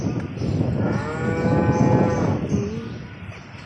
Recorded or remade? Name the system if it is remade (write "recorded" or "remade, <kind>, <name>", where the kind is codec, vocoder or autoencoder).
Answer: recorded